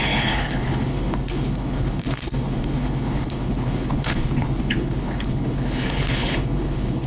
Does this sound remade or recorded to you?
remade